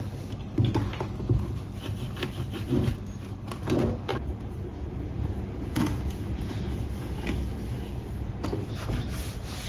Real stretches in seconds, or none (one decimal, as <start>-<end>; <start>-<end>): 0.0-4.1; 6.6-9.7